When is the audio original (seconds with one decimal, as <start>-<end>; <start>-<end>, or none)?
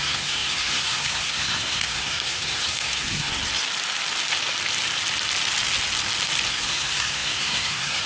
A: 3.4-6.5